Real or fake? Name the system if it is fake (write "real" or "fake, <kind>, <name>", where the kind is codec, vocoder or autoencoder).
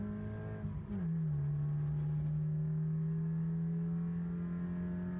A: real